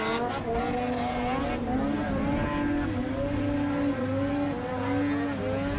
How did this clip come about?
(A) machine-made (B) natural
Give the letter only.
B